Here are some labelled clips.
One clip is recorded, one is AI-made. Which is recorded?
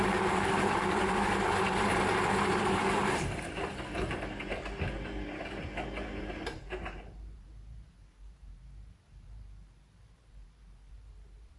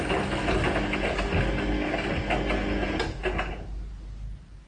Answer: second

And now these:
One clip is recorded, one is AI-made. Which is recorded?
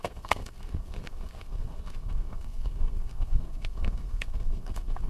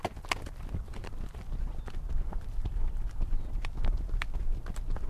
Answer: second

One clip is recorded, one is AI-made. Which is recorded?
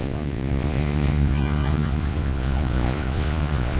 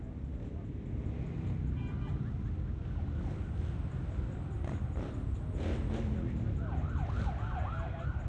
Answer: second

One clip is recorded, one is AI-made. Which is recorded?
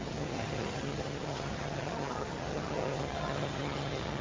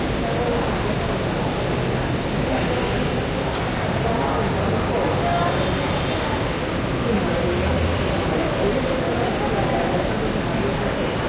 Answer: second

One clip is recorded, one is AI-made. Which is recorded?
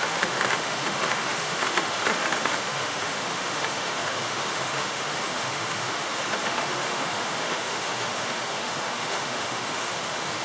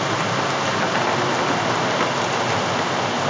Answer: second